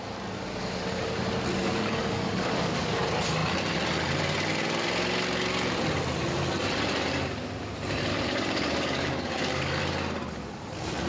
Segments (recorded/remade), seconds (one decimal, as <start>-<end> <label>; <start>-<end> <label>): 0.0-1.6 recorded; 1.6-3.0 remade; 3.0-8.1 recorded; 8.1-9.8 remade; 9.8-11.1 recorded